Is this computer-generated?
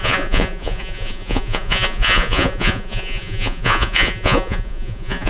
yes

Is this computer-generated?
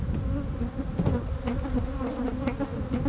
no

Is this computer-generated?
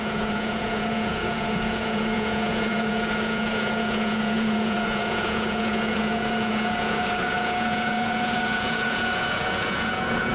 yes